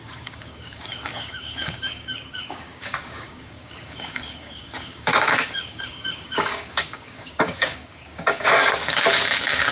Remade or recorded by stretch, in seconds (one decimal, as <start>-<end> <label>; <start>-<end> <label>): 0.0-9.7 remade